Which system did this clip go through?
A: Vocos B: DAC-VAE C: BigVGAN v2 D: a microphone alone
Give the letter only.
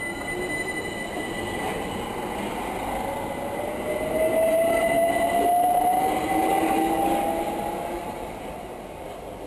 D